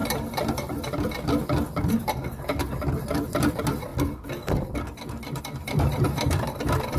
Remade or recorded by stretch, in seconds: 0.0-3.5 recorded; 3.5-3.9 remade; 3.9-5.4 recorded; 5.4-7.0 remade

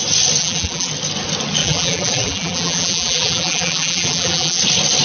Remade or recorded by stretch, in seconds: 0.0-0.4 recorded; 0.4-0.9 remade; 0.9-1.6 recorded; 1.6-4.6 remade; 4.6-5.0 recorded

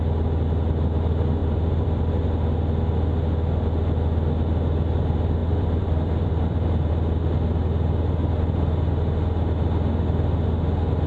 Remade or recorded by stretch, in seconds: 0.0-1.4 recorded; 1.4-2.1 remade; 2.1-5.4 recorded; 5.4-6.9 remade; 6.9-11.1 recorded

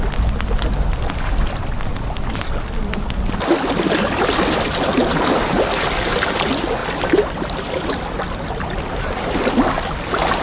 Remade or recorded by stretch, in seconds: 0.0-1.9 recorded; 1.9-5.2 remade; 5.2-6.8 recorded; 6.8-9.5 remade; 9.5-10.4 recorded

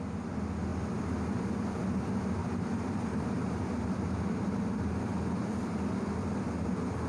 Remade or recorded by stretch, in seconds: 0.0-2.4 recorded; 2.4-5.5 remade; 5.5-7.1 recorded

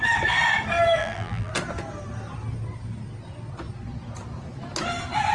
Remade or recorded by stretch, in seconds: 0.0-1.0 recorded; 1.0-1.5 remade; 1.5-5.3 recorded